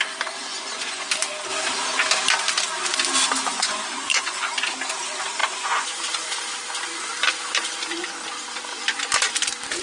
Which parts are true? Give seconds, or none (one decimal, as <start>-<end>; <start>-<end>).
0.0-0.5; 1.1-3.5; 4.5-5.4; 6.0-9.8